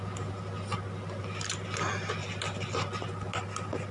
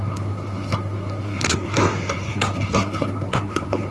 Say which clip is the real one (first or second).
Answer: first